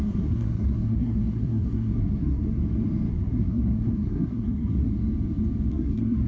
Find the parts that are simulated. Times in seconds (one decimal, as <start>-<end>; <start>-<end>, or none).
0.0-2.6; 3.1-4.9; 5.7-6.3